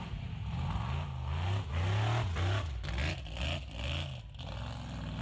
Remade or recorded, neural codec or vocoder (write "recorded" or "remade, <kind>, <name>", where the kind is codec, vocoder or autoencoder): recorded